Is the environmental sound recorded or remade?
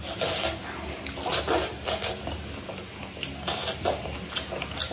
recorded